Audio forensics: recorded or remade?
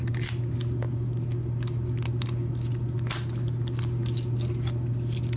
recorded